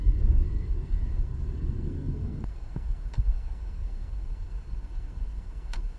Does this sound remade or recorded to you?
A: remade